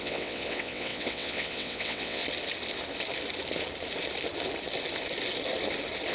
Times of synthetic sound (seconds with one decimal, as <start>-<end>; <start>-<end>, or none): 0.0-2.2